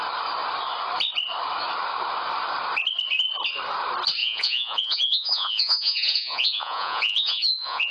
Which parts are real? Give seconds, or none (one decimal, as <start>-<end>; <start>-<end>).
0.0-4.2